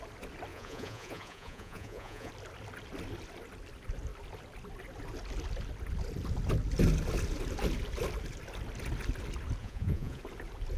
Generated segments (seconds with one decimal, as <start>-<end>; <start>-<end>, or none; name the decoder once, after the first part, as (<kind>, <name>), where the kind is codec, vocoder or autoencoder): 0.5-2.3 (vocoder, Vocos); 9.6-10.2